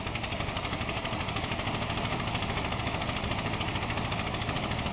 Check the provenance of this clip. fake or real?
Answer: real